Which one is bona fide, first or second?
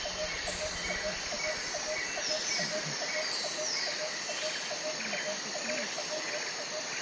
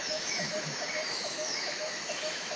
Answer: first